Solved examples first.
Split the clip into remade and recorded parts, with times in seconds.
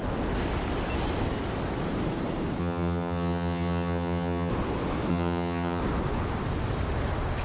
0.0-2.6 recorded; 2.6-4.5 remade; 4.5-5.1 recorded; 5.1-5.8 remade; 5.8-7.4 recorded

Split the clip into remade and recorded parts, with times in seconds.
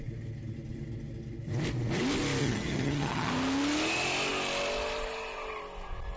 0.0-2.4 recorded; 2.4-3.3 remade; 3.3-6.2 recorded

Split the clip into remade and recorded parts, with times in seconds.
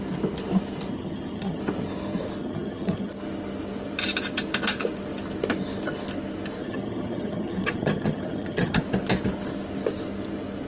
0.0-0.9 recorded; 0.9-1.6 remade; 1.6-2.4 recorded; 2.4-3.1 remade; 3.1-6.6 recorded; 6.6-8.8 remade; 8.8-10.7 recorded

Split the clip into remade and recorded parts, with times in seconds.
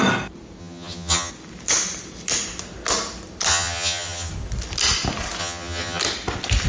0.0-0.6 recorded; 0.6-1.3 remade; 1.3-3.5 recorded; 3.5-4.3 remade; 4.3-5.4 recorded; 5.4-6.0 remade; 6.0-6.7 recorded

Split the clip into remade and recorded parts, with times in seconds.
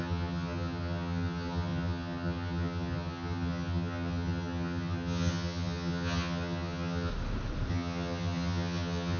0.0-7.1 remade; 7.1-7.7 recorded; 7.7-9.2 remade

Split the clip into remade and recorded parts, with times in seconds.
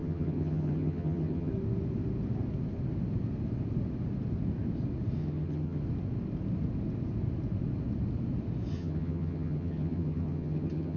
0.0-1.5 remade; 1.5-5.2 recorded; 5.2-5.8 remade; 5.8-8.7 recorded; 8.7-11.0 remade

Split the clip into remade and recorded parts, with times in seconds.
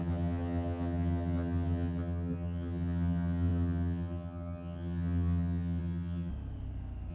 0.0-6.3 remade; 6.3-7.1 recorded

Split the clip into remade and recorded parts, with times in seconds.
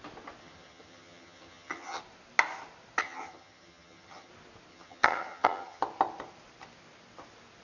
0.0-0.4 recorded; 0.4-2.0 remade; 2.0-3.0 recorded; 3.0-4.3 remade; 4.3-4.7 recorded; 4.7-5.8 remade; 5.8-7.6 recorded